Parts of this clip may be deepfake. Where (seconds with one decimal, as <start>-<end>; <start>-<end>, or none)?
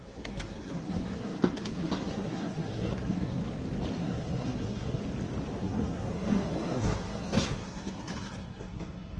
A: 0.0-3.4; 4.0-5.0; 5.6-9.2